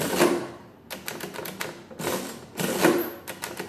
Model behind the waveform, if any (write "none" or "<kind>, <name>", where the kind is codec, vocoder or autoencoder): none